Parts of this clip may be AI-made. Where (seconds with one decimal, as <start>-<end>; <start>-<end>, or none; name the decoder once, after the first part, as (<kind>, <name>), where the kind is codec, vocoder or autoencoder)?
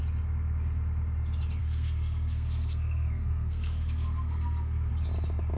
1.6-4.9 (codec, SNAC)